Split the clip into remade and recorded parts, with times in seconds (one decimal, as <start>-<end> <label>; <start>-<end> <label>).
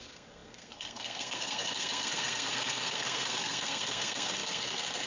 0.0-5.1 remade